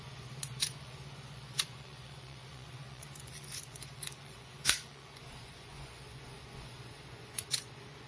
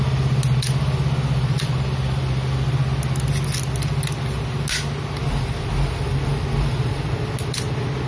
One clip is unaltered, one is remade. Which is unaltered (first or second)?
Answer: second